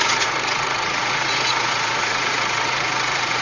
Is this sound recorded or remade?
remade